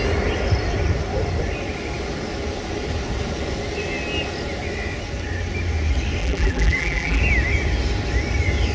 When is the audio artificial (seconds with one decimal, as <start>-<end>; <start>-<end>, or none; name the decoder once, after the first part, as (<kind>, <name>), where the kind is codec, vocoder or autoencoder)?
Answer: 6.2-7.2 (vocoder, BigVGAN v2)